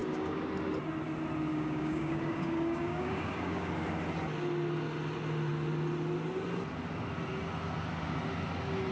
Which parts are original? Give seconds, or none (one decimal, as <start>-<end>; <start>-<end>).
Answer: 0.5-1.5; 3.7-8.9